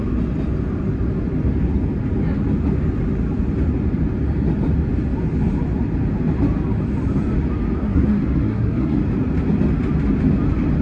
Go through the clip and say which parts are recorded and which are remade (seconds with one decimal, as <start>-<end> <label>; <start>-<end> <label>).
0.0-7.8 recorded; 7.8-9.0 remade; 9.0-10.8 recorded